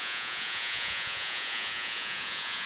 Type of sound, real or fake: fake